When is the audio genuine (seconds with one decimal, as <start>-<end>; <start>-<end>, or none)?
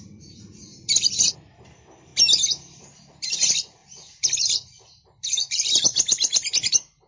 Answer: 2.1-3.1; 3.8-4.5; 5.9-7.1